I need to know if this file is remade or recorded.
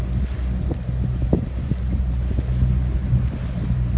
recorded